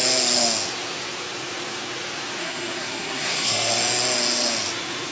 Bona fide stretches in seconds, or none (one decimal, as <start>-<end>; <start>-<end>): 0.0-2.4; 3.7-5.1